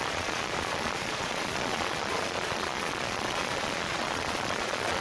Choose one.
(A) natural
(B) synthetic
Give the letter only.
B